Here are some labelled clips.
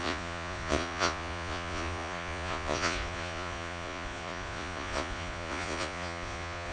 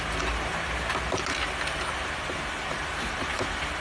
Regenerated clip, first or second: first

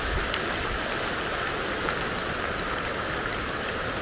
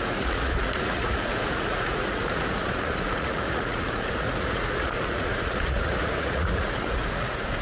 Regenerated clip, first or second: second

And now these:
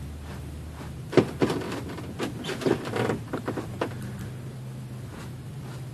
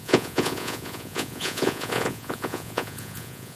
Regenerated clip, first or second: second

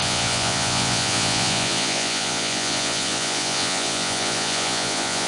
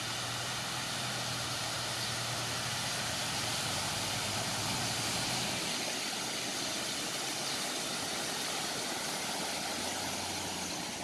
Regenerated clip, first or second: first